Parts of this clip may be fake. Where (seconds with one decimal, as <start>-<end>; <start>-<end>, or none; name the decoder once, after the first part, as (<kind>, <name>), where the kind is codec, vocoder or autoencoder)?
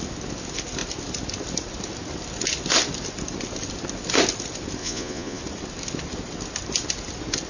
4.8-5.4 (vocoder, Vocos)